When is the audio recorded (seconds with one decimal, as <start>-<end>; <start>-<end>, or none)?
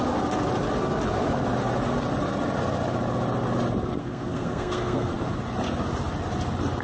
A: 0.0-4.0; 5.1-6.8